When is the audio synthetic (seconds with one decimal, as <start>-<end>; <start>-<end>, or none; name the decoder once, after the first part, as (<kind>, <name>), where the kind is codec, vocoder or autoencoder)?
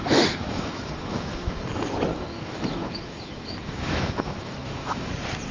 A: 0.0-1.6 (autoencoder, DAC-VAE); 2.1-5.1